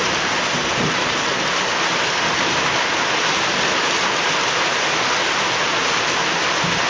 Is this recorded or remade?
recorded